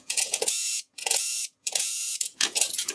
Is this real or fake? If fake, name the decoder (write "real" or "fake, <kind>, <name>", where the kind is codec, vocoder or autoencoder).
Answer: fake, vocoder, Vocos